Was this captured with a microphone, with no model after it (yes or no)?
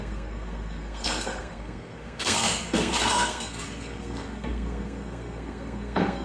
no